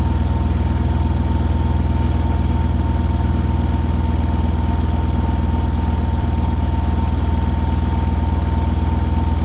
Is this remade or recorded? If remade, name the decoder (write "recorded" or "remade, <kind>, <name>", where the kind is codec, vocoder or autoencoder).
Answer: recorded